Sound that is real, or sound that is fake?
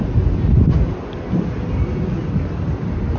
real